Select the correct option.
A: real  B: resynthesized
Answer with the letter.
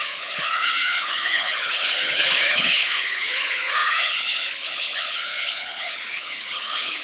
B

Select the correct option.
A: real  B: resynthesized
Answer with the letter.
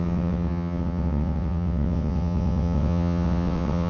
B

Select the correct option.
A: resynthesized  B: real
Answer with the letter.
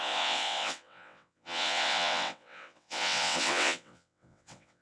A